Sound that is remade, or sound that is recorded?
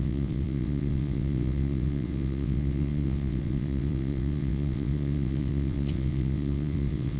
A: remade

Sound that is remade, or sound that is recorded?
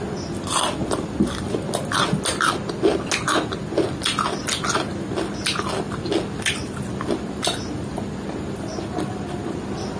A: recorded